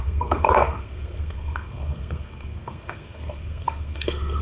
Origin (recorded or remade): remade